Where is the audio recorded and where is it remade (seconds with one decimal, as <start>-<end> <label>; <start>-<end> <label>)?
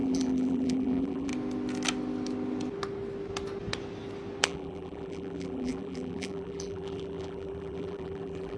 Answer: 0.0-1.3 remade; 1.3-4.4 recorded; 4.4-8.6 remade